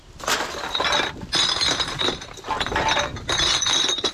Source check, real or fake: real